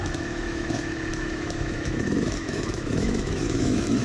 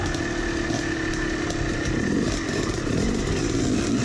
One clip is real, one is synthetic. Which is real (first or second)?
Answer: second